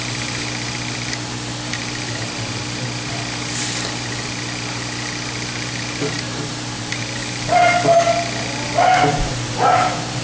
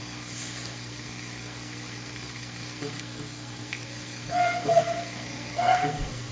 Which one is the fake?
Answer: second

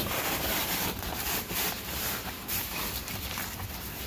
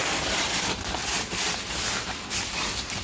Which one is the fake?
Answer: first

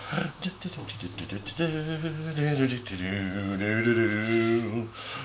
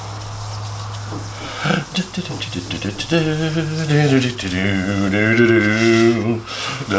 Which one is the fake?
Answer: first